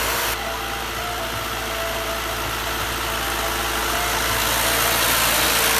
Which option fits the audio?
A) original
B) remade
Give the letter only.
A